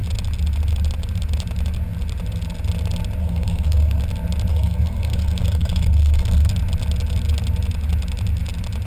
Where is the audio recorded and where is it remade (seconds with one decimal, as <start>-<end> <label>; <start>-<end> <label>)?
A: 0.0-3.2 recorded; 3.2-4.0 remade; 4.0-4.5 recorded; 4.5-6.5 remade; 6.5-8.9 recorded